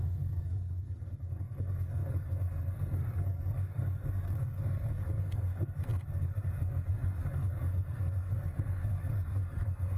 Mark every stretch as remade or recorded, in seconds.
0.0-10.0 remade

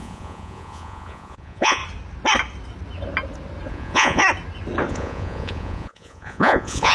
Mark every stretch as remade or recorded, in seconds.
0.0-1.8 remade; 1.8-3.7 recorded; 3.7-4.2 remade; 4.2-4.9 recorded; 4.9-6.9 remade